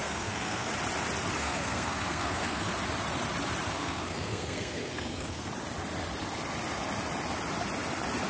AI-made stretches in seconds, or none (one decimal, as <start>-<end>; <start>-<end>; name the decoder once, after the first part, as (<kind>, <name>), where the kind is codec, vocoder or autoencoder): 0.0-0.7 (codec, SNAC); 1.4-2.7; 3.8-5.5